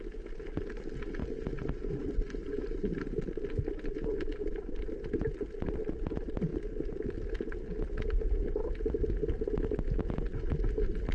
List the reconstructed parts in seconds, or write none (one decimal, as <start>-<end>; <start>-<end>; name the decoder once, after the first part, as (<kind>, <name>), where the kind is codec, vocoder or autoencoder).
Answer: none